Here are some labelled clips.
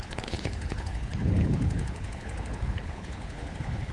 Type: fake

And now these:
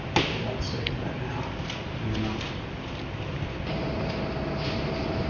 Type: real